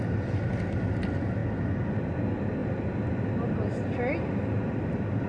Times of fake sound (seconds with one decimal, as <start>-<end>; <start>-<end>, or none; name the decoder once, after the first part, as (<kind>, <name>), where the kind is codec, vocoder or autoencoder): none